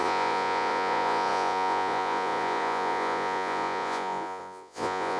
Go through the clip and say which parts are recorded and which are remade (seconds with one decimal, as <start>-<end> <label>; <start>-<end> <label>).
0.0-5.2 remade